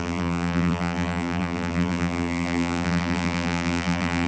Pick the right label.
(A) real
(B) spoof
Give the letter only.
B